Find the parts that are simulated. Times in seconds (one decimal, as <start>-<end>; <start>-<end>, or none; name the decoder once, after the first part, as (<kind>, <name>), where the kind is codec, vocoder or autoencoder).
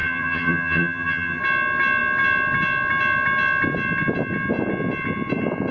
0.0-1.4 (vocoder, HiFi-GAN)